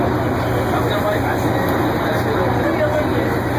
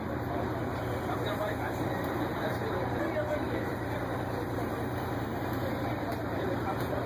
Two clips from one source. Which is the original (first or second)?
first